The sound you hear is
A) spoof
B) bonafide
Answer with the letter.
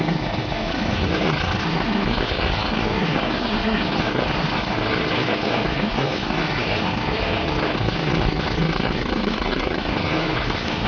A